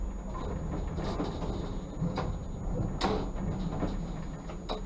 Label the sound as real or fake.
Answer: real